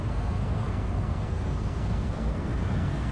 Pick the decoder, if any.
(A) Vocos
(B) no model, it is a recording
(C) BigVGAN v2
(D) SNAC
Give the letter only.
D